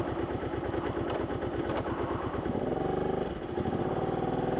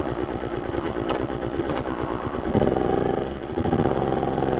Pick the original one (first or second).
first